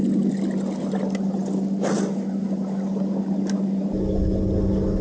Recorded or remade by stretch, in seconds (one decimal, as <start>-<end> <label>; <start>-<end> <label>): 0.0-5.0 recorded